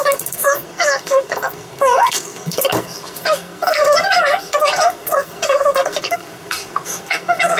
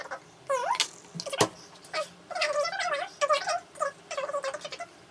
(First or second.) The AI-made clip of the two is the first